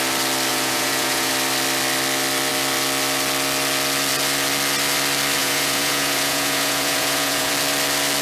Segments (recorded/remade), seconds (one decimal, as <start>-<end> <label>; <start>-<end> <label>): 0.0-0.5 recorded; 0.5-1.3 remade; 1.3-5.4 recorded; 5.4-7.5 remade; 7.5-8.2 recorded